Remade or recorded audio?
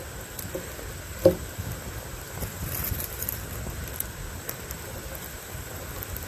recorded